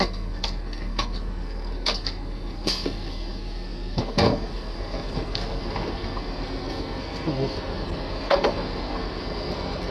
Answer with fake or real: fake